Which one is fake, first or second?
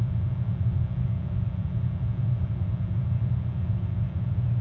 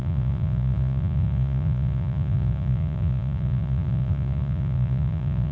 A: second